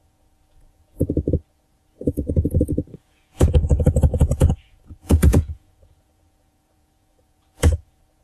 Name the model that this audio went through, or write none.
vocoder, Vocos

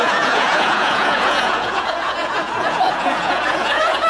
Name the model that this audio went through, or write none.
vocoder, Vocos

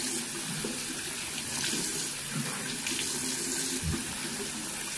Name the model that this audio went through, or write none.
none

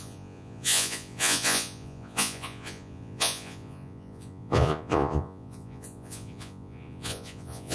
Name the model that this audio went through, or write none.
vocoder, Vocos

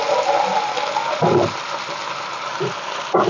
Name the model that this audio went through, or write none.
none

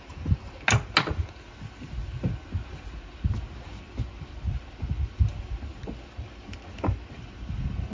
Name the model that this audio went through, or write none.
none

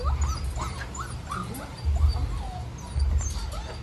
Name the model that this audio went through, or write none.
none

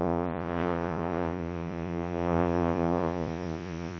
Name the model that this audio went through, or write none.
vocoder, Vocos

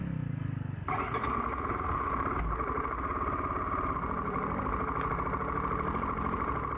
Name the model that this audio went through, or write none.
none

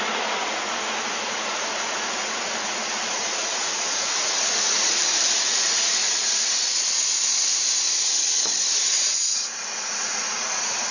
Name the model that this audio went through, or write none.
vocoder, Vocos